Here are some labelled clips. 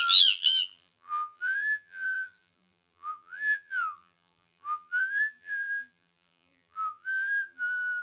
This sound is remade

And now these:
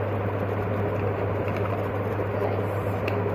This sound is recorded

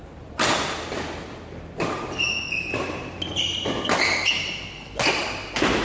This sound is recorded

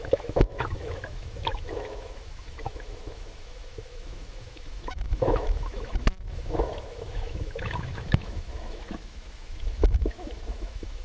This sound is remade